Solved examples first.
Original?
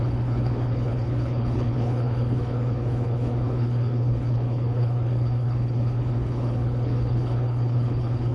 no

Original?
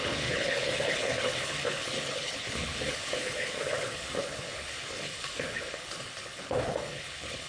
no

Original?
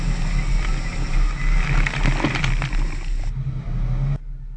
yes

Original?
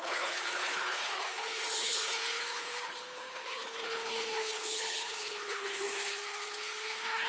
no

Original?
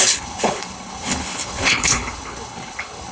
no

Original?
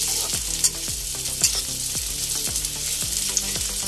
yes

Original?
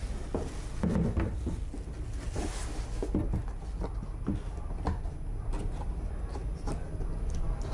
yes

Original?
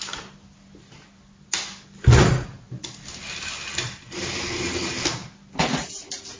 yes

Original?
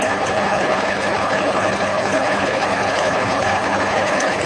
no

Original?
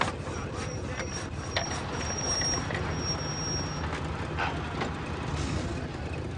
yes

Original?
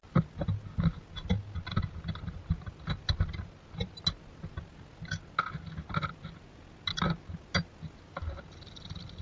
yes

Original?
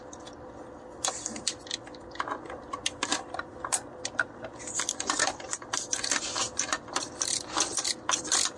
yes